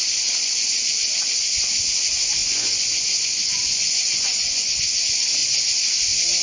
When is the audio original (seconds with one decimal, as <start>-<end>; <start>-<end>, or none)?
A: 0.0-2.4; 4.8-6.4